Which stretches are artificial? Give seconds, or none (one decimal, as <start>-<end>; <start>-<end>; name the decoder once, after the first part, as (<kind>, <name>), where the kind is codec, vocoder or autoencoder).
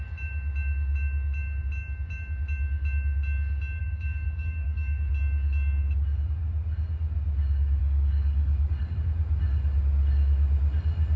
3.8-5.1 (codec, DAC); 7.8-8.7